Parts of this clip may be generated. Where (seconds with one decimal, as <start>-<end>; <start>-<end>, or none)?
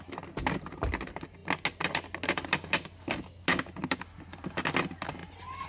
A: none